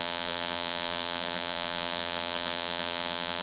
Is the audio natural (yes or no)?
no